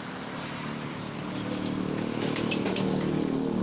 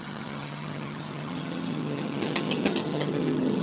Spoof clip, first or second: second